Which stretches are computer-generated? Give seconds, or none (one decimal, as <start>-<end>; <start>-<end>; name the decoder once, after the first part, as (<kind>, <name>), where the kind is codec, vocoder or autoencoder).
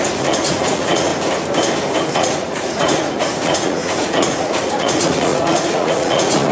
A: 0.0-1.1 (vocoder, Vocos); 2.1-6.5